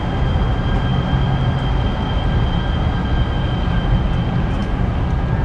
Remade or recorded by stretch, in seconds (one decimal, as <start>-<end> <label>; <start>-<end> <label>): 0.0-5.4 recorded